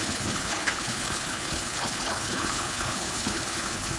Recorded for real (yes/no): no